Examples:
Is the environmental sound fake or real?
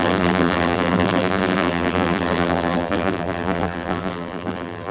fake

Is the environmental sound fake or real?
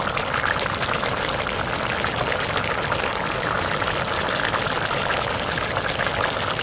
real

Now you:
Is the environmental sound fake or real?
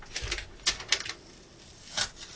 real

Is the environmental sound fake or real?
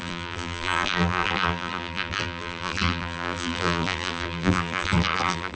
fake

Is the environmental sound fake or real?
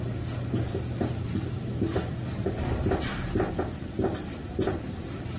fake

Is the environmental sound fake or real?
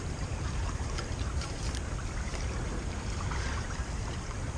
fake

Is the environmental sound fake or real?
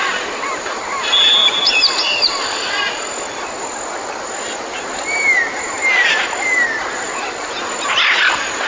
fake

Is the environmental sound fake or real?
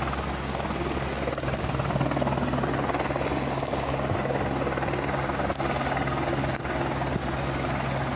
real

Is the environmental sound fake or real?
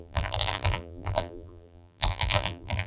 fake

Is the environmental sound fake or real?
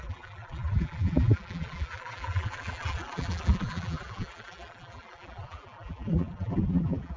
fake